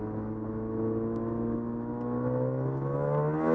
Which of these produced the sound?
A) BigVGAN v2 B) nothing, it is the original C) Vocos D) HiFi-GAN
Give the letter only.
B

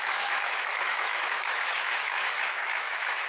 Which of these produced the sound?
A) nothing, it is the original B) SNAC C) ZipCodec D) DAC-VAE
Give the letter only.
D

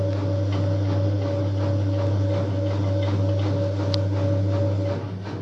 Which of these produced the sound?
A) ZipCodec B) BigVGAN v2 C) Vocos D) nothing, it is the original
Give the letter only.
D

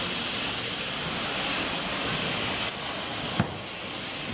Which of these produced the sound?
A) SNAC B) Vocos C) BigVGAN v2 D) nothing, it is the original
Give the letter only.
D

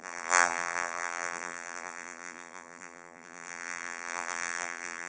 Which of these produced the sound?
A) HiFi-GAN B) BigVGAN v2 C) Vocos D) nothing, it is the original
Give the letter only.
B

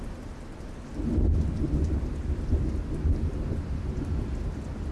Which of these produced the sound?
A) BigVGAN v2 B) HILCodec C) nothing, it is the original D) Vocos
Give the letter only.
C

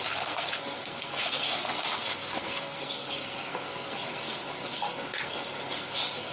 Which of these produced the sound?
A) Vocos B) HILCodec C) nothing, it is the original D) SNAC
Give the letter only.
D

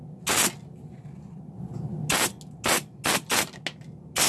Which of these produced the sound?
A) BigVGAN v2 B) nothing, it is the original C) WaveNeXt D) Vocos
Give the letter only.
B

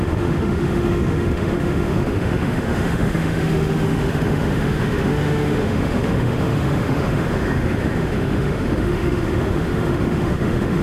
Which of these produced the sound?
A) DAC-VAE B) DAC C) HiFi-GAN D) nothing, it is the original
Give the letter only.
A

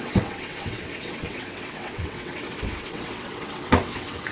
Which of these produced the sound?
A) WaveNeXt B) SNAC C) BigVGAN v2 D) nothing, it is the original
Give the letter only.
A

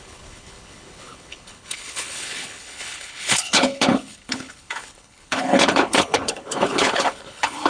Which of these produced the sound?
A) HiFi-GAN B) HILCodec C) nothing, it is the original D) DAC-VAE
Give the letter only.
B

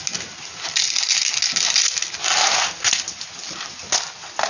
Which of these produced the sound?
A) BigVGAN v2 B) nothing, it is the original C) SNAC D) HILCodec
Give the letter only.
B